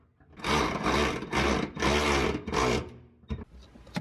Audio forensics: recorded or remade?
recorded